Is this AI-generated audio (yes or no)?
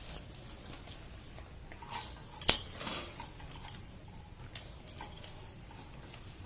no